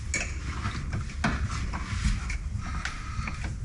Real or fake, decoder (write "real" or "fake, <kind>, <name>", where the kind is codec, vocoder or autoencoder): real